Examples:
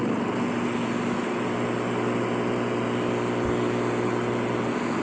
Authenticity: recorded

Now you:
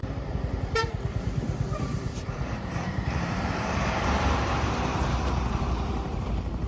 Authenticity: remade